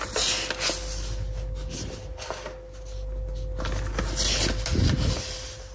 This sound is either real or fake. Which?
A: real